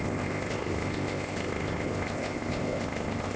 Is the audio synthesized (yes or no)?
yes